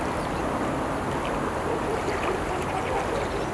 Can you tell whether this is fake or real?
real